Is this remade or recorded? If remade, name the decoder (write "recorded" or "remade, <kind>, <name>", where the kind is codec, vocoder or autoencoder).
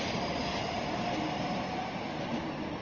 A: recorded